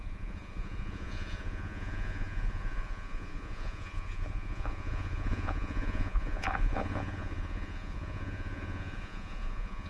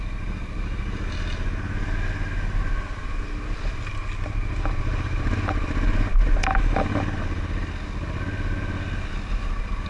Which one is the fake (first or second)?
first